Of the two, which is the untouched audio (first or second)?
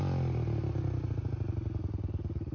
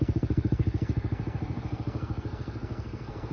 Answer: first